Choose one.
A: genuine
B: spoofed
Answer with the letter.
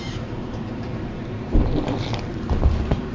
B